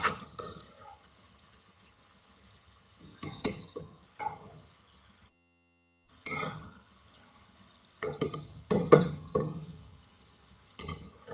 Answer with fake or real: fake